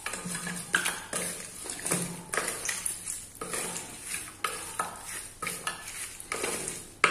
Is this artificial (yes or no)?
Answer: no